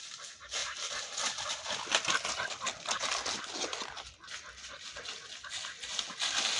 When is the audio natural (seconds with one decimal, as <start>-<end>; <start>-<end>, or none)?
0.0-6.6